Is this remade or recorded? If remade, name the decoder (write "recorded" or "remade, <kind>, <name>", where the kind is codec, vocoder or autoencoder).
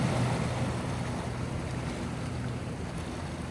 remade, vocoder, BigVGAN v2